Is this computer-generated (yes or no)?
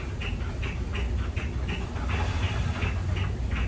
no